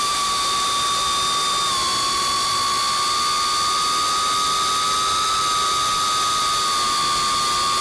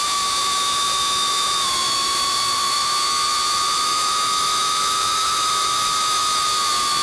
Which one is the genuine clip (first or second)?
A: first